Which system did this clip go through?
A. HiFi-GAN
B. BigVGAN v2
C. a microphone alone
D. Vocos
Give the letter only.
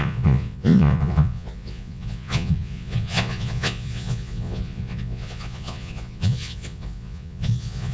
D